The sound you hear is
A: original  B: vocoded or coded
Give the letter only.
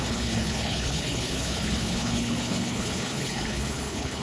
B